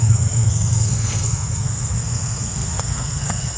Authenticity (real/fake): fake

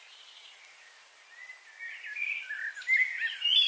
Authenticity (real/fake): real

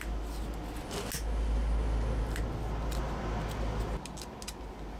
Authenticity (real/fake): real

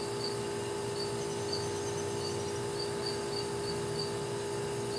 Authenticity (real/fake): real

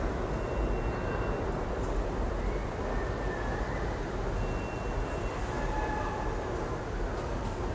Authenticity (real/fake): real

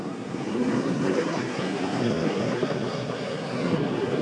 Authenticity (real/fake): fake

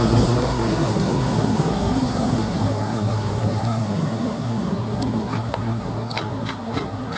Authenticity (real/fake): fake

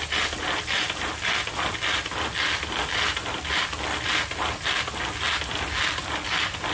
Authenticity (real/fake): real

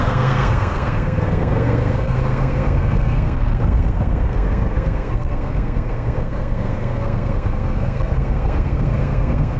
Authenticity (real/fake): fake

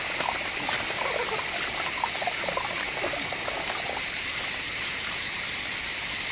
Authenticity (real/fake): real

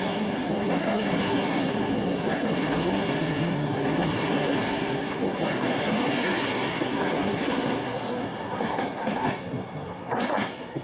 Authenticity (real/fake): fake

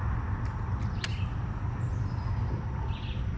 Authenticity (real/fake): real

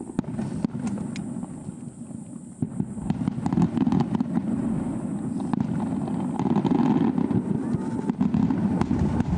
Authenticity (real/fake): real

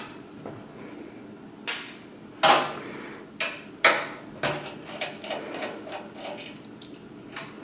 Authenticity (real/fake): real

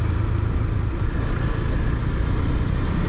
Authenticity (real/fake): real